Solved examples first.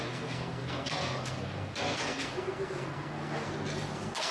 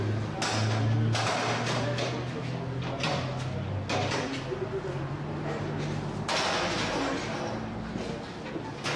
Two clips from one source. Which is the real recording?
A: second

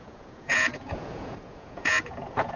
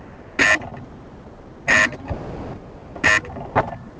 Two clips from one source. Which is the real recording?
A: second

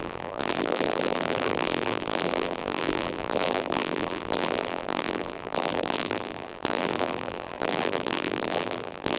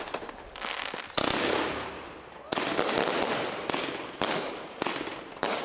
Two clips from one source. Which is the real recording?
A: second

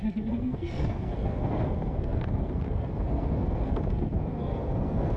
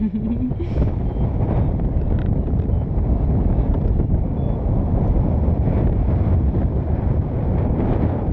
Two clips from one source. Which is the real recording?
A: second